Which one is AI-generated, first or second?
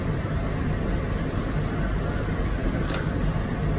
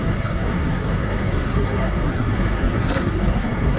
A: second